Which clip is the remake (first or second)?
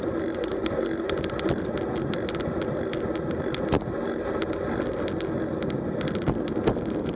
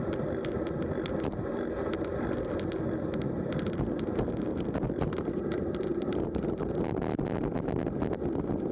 second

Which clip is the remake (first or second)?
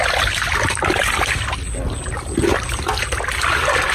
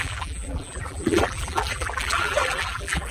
second